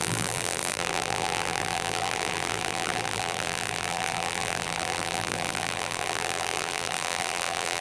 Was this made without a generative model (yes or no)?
no